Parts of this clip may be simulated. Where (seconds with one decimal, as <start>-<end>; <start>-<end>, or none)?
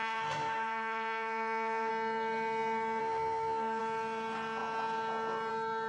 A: 0.0-1.9; 3.0-3.8